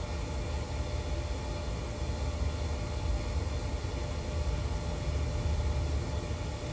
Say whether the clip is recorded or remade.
recorded